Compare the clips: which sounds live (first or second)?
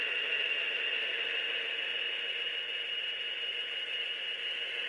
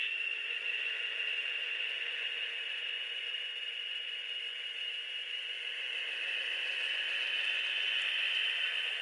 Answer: first